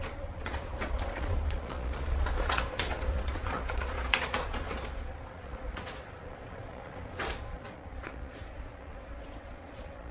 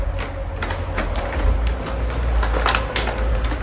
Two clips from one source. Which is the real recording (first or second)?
second